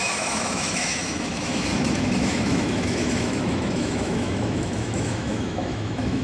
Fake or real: fake